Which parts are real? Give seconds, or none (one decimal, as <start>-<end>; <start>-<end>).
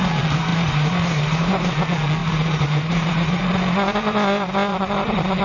0.0-0.5; 1.8-2.2; 3.4-4.7